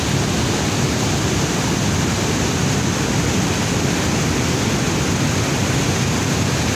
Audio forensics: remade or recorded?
recorded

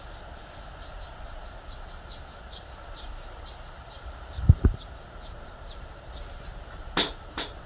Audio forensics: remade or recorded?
recorded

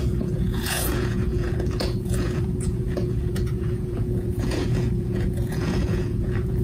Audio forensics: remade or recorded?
remade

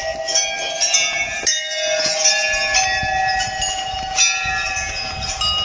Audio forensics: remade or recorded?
recorded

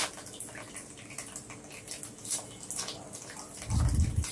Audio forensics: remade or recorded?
recorded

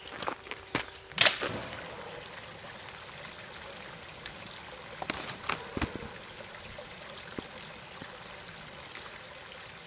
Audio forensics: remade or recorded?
recorded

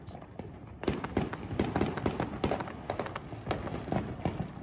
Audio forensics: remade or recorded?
recorded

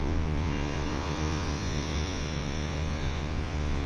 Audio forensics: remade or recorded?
remade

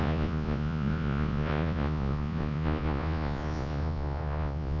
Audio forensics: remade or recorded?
remade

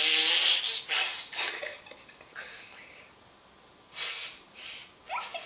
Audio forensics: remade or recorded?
recorded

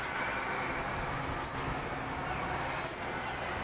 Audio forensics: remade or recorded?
recorded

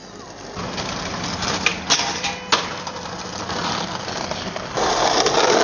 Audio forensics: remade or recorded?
recorded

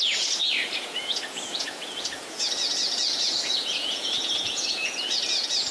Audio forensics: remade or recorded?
remade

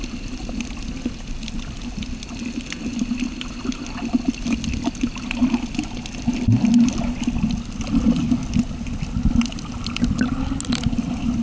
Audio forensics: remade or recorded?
recorded